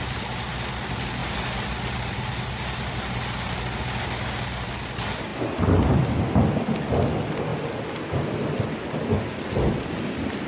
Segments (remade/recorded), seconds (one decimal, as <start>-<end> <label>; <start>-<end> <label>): 0.0-10.5 recorded